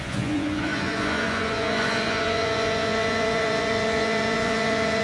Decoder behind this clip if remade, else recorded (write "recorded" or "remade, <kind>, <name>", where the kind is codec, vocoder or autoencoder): remade, vocoder, Vocos